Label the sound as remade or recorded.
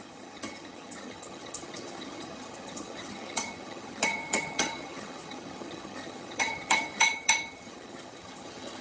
remade